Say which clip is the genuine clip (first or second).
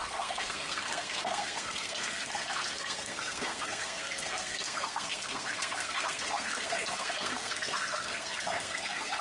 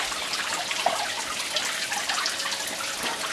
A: second